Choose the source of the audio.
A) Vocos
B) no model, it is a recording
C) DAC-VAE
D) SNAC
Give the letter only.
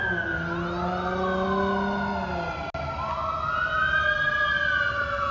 B